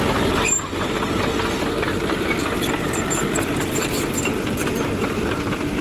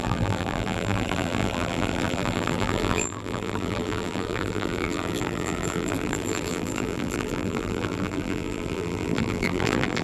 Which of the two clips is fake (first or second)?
second